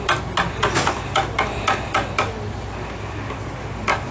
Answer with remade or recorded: recorded